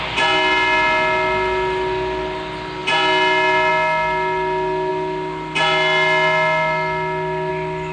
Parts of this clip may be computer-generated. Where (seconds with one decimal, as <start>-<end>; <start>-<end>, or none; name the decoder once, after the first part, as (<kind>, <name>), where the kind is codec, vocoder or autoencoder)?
none